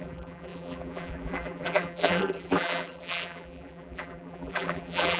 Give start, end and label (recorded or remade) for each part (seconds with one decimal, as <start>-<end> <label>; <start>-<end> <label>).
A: 0.0-5.2 remade